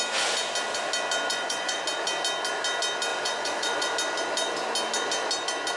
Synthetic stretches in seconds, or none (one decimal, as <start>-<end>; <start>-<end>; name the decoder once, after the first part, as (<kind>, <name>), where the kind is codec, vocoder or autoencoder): 1.3-1.8 (vocoder, Vocos); 3.1-3.9